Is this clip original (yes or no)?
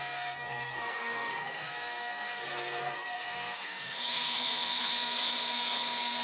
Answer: no